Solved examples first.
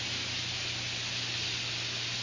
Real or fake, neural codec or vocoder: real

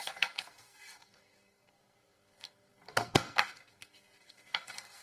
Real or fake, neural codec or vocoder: fake, codec, SNAC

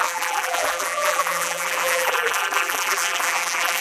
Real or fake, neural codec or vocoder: fake, vocoder, BigVGAN v2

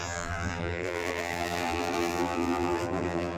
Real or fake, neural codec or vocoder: fake, vocoder, BigVGAN v2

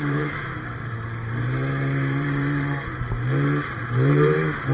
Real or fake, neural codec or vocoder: fake, vocoder, BigVGAN v2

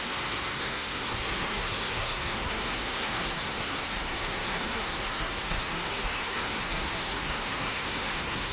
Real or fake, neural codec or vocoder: fake, codec, SNAC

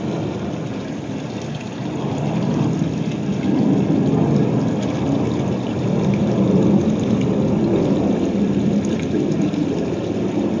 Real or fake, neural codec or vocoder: real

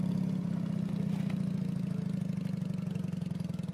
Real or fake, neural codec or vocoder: real